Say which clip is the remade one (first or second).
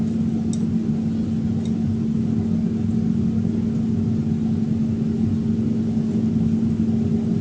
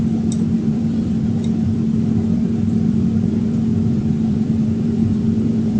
second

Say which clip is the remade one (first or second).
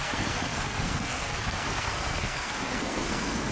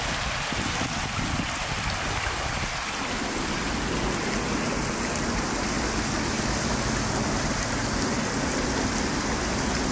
first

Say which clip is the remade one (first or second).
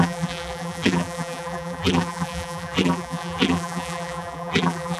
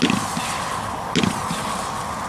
first